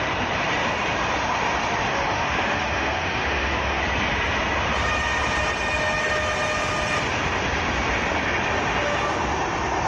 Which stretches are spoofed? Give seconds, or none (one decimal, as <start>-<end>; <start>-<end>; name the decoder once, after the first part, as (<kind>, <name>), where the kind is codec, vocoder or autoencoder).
1.9-3.8 (autoencoder, DAC-VAE)